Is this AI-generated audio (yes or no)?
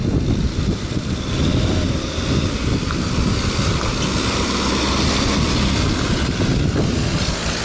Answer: no